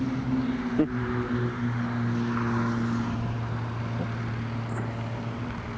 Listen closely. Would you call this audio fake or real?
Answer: real